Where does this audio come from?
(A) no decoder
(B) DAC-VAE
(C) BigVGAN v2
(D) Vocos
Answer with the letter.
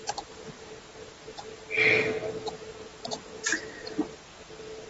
A